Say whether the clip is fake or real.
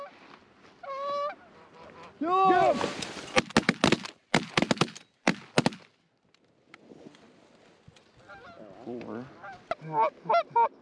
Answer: real